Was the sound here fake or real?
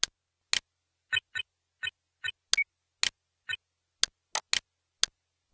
real